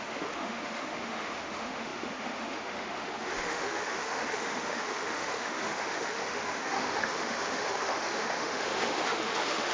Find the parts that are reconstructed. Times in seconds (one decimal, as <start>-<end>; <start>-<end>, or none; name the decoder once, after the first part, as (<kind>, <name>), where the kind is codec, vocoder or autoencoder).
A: 0.0-9.7 (autoencoder, DAC-VAE)